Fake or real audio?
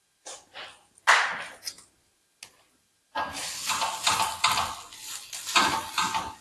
real